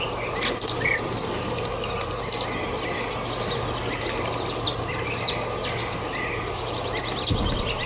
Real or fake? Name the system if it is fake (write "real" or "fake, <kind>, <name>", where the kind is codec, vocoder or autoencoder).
real